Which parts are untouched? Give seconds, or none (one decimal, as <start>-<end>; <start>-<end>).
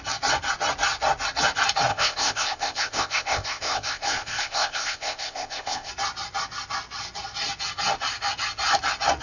0.0-1.9; 5.9-9.2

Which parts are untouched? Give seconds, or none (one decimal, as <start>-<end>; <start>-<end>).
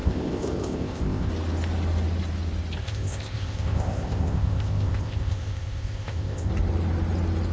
1.3-2.8; 6.5-7.5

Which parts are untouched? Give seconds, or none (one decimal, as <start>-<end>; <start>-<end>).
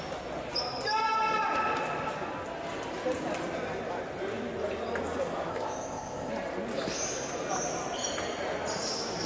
0.0-5.5; 6.3-9.3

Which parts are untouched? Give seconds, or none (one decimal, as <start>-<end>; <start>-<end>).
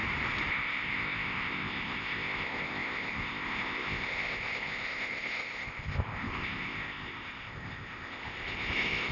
0.0-0.5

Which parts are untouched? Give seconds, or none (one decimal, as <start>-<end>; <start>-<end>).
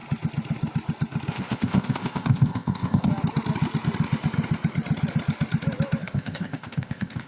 0.0-1.3; 3.1-6.0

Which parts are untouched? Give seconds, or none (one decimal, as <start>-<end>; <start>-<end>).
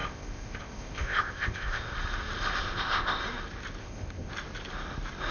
1.9-2.6; 3.2-3.8; 4.3-5.3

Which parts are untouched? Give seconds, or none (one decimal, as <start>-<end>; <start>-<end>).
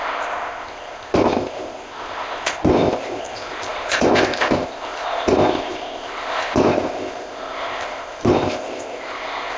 none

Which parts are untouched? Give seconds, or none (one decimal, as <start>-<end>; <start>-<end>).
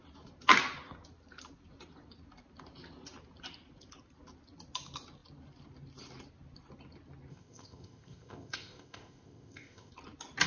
0.0-7.3; 9.9-10.5